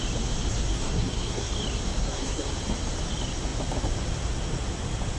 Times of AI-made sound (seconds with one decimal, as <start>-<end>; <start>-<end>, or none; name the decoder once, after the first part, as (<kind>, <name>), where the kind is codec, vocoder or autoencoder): 0.5-1.5 (codec, SNAC); 2.0-2.5